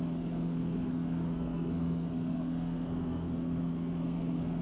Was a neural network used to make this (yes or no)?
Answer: yes